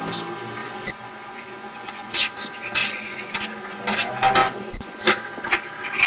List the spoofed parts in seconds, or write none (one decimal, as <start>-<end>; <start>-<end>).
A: 0.6-2.3; 2.8-3.8; 4.4-5.0